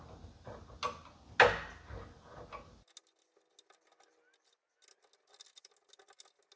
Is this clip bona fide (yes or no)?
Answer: yes